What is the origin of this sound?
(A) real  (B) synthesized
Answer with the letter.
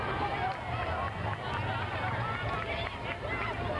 A